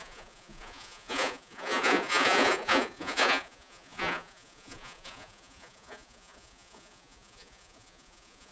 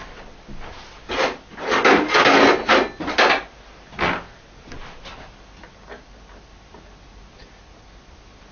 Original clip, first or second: second